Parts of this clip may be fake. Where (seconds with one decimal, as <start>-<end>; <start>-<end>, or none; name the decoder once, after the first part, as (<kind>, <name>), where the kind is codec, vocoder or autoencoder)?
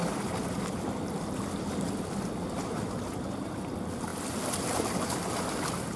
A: none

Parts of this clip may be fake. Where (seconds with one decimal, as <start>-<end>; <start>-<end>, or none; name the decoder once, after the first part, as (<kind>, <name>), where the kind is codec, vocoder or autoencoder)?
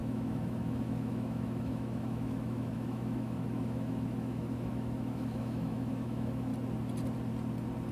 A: 0.0-6.5 (autoencoder, DAC-VAE)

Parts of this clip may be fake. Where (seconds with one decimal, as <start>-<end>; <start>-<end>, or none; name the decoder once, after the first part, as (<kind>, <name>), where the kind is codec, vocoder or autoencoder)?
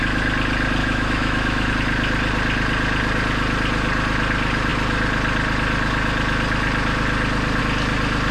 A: 0.8-1.7 (autoencoder, DAC-VAE)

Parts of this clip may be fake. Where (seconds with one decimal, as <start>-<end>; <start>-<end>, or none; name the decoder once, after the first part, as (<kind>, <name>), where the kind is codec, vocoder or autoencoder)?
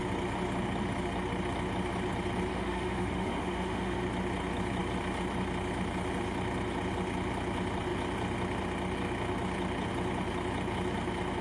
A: 2.5-4.0 (autoencoder, DAC-VAE)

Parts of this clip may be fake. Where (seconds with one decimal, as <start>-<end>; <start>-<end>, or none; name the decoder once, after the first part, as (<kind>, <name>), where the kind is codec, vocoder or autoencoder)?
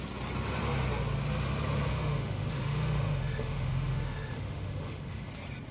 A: 1.9-5.3 (autoencoder, DAC-VAE)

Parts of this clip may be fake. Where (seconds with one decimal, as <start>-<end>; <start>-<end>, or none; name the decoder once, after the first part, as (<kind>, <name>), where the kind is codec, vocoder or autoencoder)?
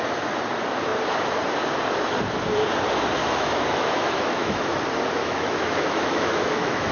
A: 3.2-4.8 (autoencoder, DAC-VAE); 5.2-6.9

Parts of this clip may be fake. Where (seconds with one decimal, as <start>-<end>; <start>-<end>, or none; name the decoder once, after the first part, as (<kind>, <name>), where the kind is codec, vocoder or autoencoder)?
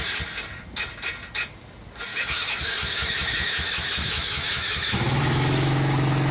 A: 2.1-6.3 (autoencoder, DAC-VAE)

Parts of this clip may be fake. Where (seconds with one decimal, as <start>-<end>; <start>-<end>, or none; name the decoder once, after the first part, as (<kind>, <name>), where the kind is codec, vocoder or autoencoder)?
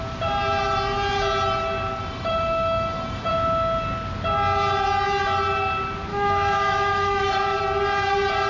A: 2.0-3.3 (autoencoder, DAC-VAE); 6.1-7.6